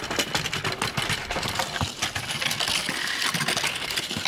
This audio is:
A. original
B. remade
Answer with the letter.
A